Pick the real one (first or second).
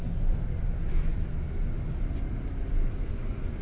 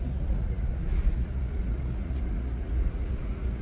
first